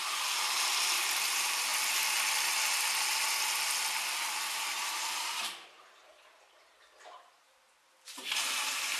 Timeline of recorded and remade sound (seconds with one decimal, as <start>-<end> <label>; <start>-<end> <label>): 0.0-1.7 remade; 1.7-4.6 recorded; 4.6-9.0 remade